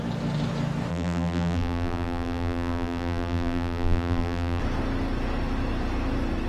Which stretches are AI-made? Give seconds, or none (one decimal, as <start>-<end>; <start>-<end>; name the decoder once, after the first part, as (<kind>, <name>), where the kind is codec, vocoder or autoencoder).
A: 0.9-4.6 (vocoder, BigVGAN v2)